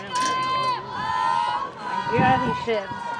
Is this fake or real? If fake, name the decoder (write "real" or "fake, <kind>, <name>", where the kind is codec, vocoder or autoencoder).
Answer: real